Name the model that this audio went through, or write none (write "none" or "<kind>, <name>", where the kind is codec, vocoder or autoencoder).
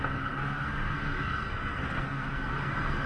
codec, SNAC